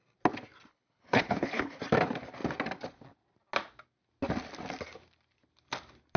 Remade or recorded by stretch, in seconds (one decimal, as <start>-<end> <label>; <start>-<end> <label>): 0.0-0.7 recorded; 0.7-1.8 remade; 1.8-6.2 recorded